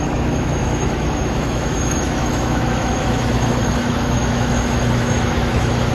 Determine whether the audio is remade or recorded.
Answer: remade